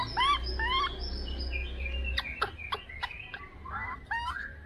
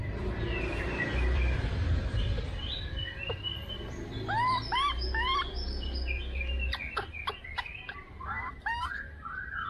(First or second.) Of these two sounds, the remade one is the second